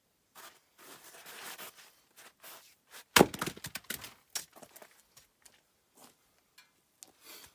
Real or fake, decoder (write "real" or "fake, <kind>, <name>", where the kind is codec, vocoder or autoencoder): real